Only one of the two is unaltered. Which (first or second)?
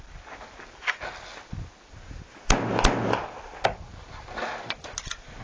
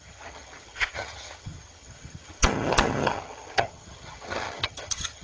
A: first